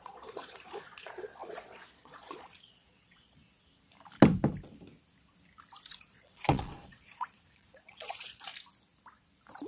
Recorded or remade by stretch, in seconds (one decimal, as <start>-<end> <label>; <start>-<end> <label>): 0.0-3.4 remade; 3.4-5.9 recorded; 5.9-8.5 remade; 8.5-9.7 recorded